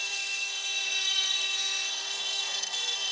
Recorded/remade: remade